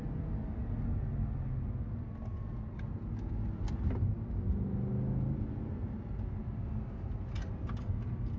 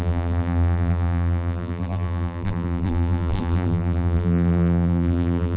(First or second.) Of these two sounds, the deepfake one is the second